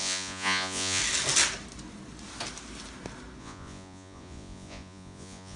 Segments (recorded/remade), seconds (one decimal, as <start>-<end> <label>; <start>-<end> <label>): 0.0-1.0 remade; 1.0-3.4 recorded; 3.4-5.6 remade